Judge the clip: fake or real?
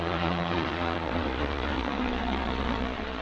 fake